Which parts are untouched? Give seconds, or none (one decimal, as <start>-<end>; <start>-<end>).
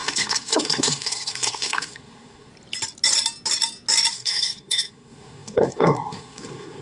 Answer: 2.5-4.1